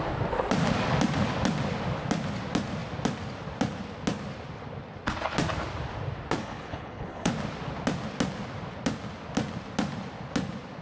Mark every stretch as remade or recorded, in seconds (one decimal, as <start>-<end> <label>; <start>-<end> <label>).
0.0-6.4 recorded; 6.4-7.3 remade; 7.3-10.8 recorded